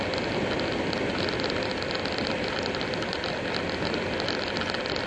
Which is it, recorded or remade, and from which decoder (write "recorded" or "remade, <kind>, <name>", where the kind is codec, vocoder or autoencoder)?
recorded